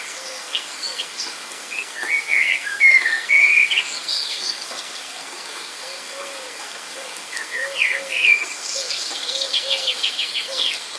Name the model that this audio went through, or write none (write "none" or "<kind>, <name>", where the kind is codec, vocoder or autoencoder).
codec, SNAC